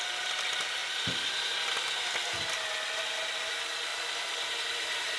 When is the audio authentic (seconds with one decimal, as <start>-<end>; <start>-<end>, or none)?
0.0-5.2